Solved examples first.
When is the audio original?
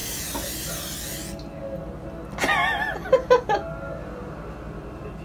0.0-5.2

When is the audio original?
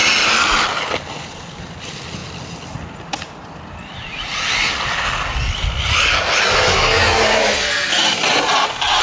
0.0-9.0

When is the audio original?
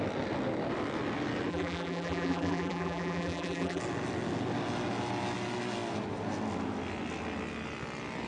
0.0-1.5; 3.8-8.3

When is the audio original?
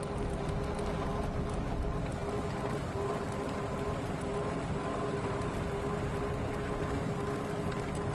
0.0-8.1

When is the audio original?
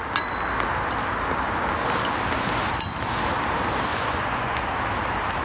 0.0-3.9; 4.6-5.4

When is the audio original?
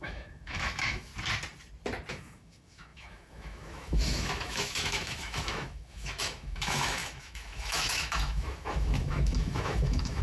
1.1-2.1